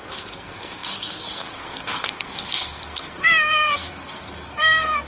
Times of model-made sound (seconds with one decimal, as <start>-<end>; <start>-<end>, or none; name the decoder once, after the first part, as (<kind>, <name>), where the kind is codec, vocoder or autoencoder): 0.0-5.1 (codec, SNAC)